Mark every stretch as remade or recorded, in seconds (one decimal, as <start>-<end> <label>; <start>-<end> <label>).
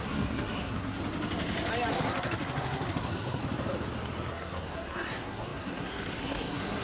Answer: 0.0-1.0 remade; 1.0-1.9 recorded; 1.9-3.4 remade; 3.4-4.3 recorded; 4.3-6.8 remade